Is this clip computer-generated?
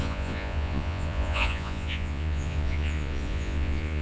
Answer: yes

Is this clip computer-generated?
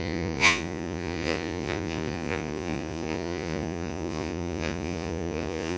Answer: yes